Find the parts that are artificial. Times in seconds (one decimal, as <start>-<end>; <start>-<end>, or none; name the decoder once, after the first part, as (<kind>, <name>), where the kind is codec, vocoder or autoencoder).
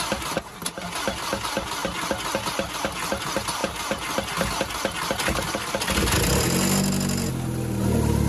none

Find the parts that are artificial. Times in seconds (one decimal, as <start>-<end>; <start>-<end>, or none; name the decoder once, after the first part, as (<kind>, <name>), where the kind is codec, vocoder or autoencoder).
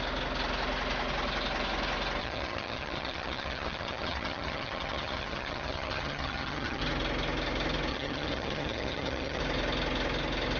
2.2-6.8 (vocoder, HiFi-GAN); 7.9-9.4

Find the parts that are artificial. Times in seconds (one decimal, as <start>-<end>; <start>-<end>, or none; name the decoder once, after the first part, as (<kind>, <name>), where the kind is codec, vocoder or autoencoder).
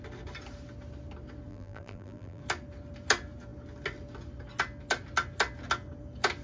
1.5-2.4 (vocoder, BigVGAN v2)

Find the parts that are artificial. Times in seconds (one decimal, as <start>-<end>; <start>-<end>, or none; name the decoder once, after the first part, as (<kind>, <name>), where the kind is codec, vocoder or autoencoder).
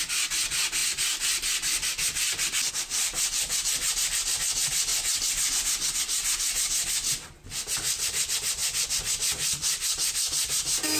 none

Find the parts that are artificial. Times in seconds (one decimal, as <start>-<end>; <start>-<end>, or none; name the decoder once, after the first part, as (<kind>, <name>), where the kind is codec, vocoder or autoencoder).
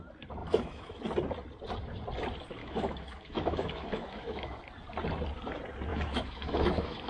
0.4-1.0 (autoencoder, DAC-VAE); 2.6-4.6; 5.9-7.1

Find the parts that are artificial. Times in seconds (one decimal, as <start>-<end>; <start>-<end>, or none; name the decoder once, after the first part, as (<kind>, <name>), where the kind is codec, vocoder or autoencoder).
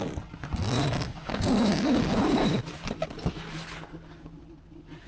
1.1-2.6 (codec, DAC)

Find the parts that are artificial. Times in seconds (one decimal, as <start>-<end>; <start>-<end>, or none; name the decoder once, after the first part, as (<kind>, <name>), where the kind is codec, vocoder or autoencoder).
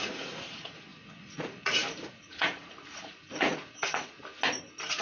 0.0-4.2 (vocoder, Vocos)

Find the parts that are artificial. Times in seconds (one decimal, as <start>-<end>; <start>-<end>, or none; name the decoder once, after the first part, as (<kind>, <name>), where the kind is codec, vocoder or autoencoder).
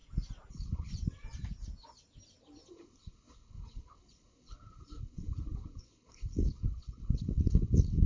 0.5-0.9 (codec, HILCodec); 2.7-8.1